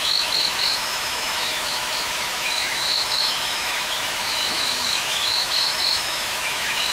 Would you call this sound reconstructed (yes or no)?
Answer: yes